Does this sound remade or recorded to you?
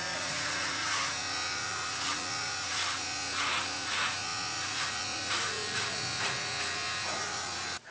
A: remade